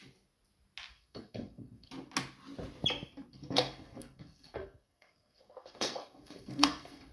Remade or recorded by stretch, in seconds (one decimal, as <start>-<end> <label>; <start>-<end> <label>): 0.0-0.9 recorded; 0.9-1.9 remade; 1.9-3.3 recorded; 3.3-7.1 remade